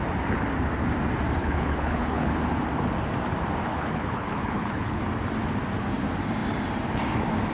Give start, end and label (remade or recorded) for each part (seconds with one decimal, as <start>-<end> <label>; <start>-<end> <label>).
0.0-1.4 recorded; 1.4-2.3 remade; 2.3-3.7 recorded; 3.7-5.0 remade; 5.0-7.5 recorded